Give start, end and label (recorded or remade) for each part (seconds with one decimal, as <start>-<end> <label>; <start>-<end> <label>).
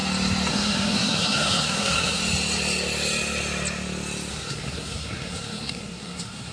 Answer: 0.0-0.5 recorded; 0.5-2.2 remade; 2.2-4.3 recorded; 4.3-6.5 remade